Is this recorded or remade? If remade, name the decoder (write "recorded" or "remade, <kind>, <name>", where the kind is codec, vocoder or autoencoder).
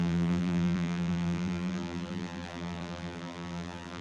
remade, vocoder, BigVGAN v2